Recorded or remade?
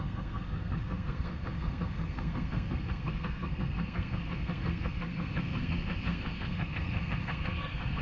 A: remade